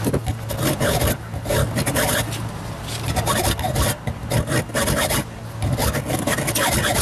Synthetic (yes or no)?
no